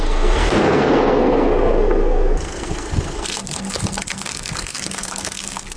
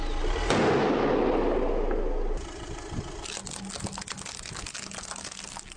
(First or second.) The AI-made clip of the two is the first